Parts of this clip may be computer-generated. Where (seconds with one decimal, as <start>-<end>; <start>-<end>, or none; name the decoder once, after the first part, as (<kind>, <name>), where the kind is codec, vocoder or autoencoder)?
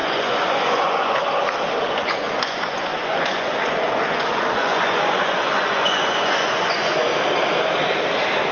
0.0-1.2 (vocoder, Vocos); 1.9-7.1